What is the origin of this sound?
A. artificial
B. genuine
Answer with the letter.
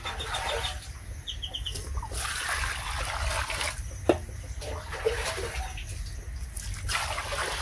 B